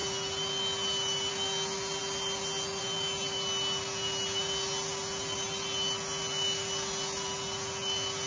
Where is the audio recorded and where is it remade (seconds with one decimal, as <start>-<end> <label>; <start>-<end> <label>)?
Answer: 0.0-8.3 recorded